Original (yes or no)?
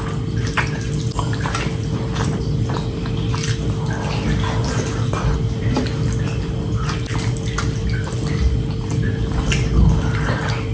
yes